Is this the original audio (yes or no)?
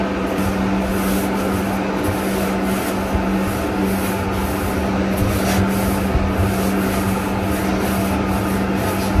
yes